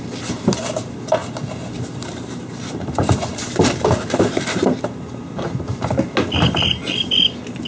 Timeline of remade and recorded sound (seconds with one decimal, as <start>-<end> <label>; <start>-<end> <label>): 0.0-1.2 recorded; 1.2-5.8 remade; 5.8-7.7 recorded